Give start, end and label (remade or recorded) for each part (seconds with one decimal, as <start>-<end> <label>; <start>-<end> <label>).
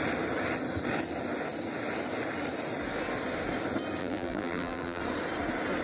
0.0-4.0 recorded; 4.0-5.0 remade; 5.0-5.8 recorded